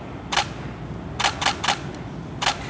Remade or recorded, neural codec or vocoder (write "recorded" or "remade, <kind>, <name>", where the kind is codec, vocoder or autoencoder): recorded